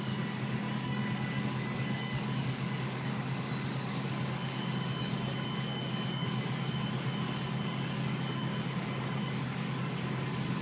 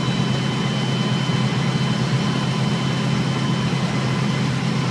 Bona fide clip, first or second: second